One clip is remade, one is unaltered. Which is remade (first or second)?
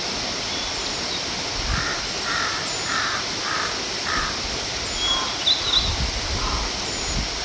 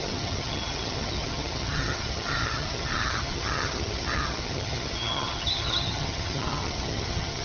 second